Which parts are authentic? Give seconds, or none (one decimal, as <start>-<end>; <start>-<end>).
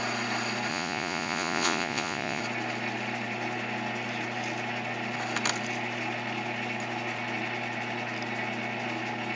0.0-0.7; 2.4-9.4